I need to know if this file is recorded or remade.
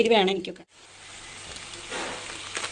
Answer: recorded